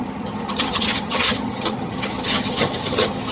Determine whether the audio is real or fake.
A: fake